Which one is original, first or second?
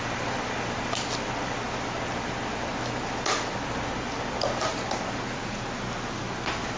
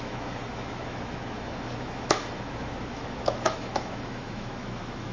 first